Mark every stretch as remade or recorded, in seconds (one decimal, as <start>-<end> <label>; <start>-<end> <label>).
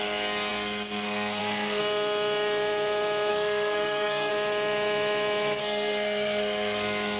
0.0-1.8 remade; 1.8-3.3 recorded; 3.3-4.3 remade; 4.3-5.6 recorded; 5.6-7.2 remade